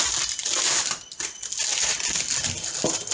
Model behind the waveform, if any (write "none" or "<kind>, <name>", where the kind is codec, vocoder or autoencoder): none